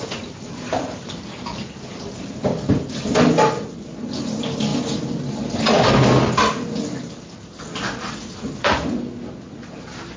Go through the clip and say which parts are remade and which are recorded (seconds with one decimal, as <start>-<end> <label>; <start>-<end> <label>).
0.0-10.2 recorded

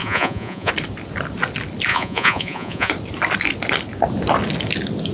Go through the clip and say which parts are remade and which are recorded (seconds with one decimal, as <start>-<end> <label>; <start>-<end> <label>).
0.0-0.7 remade; 0.7-1.9 recorded; 1.9-2.9 remade; 2.9-5.1 recorded

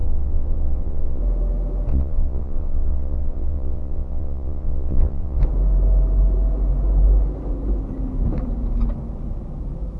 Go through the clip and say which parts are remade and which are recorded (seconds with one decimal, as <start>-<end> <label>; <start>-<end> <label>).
0.0-1.2 remade; 1.2-1.9 recorded; 1.9-5.4 remade; 5.4-10.0 recorded

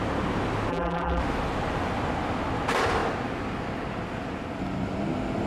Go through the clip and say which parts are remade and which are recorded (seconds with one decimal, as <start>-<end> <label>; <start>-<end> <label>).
0.0-0.7 recorded; 0.7-1.2 remade; 1.2-5.5 recorded

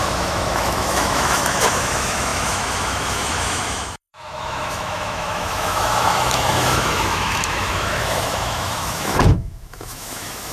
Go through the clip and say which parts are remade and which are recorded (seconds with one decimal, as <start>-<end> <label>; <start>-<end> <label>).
0.0-10.5 remade

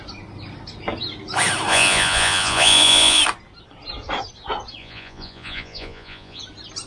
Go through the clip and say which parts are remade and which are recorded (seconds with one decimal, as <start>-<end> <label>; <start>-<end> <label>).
0.0-1.7 recorded; 1.7-3.2 remade; 3.2-4.8 recorded; 4.8-6.4 remade; 6.4-6.9 recorded

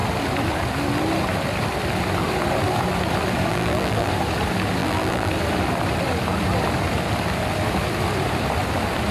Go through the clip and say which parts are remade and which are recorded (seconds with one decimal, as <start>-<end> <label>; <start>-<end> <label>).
0.0-3.5 recorded; 3.5-4.1 remade; 4.1-4.8 recorded; 4.8-5.3 remade; 5.3-9.1 recorded

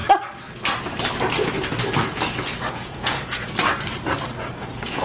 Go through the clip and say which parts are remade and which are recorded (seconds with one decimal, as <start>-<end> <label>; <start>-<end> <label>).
0.0-2.7 recorded; 2.7-3.6 remade; 3.6-4.5 recorded; 4.5-5.0 remade